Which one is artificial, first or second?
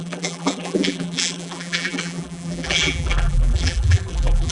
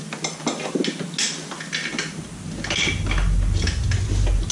first